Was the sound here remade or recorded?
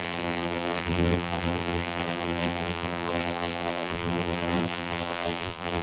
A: remade